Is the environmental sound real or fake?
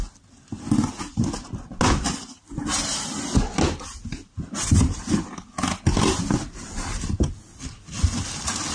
real